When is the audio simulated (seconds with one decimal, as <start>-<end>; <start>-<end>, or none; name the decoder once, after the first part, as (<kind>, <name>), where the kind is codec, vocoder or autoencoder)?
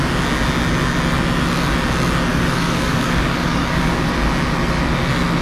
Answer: 2.3-4.1 (codec, DAC)